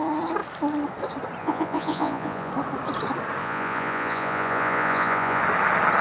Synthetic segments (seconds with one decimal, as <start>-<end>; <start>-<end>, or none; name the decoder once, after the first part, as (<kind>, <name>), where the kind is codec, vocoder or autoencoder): 1.4-2.5 (vocoder, Vocos); 3.4-5.4